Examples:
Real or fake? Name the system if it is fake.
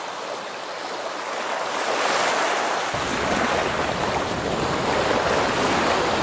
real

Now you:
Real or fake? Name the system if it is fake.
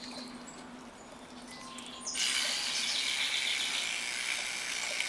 real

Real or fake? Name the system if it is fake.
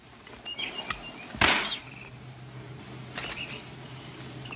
real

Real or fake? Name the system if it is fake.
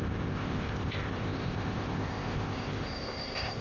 fake, codec, ZipCodec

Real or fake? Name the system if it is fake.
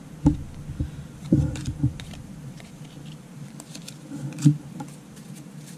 fake, vocoder, BigVGAN v2